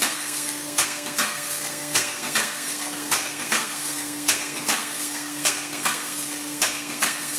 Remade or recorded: remade